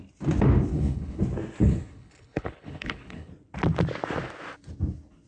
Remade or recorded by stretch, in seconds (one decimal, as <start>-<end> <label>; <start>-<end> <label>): 0.0-0.7 recorded; 0.7-1.2 remade; 1.2-1.6 recorded; 1.6-3.3 remade; 3.3-5.3 recorded